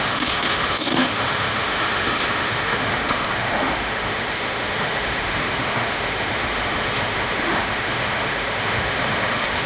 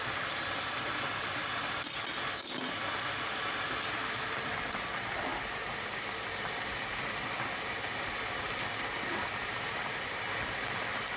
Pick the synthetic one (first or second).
first